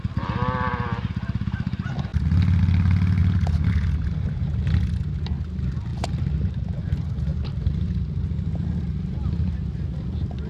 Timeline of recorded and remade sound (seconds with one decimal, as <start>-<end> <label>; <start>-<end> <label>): 0.0-10.5 recorded